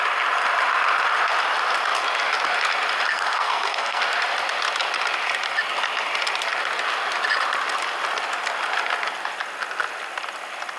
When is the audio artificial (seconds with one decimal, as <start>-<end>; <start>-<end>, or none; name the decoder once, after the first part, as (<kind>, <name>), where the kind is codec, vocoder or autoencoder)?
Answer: 3.1-4.0 (codec, SNAC)